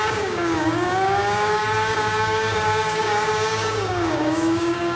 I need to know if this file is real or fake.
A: fake